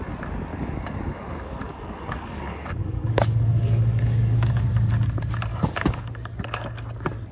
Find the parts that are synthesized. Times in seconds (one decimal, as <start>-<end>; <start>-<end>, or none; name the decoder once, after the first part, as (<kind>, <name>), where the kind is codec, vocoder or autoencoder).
0.5-4.9 (codec, DAC); 5.5-6.1